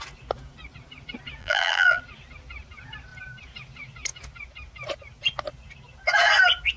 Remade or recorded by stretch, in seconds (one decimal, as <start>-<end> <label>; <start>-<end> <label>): 0.0-1.4 recorded; 1.4-2.0 remade; 2.0-6.8 recorded